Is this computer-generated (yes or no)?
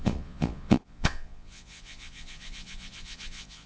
yes